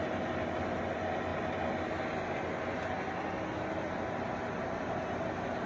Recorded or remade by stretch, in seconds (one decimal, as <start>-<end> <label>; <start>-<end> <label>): 0.0-5.7 recorded